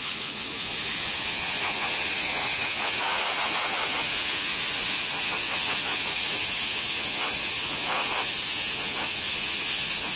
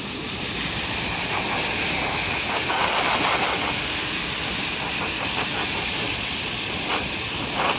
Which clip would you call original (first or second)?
second